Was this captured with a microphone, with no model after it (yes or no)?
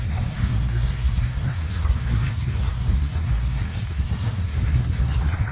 no